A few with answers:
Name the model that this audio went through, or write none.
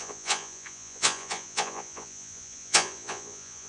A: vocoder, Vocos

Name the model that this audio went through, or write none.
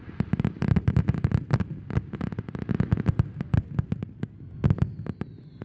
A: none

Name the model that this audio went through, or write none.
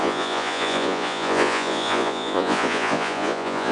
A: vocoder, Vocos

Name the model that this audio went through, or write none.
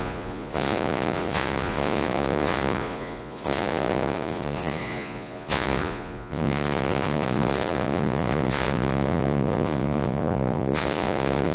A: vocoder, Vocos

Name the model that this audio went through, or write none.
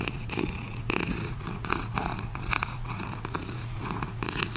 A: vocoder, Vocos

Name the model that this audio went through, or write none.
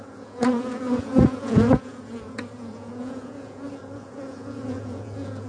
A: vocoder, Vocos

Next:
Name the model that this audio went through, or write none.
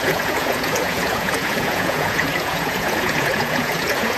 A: vocoder, Vocos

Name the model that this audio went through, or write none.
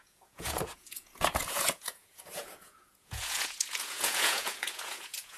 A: vocoder, Vocos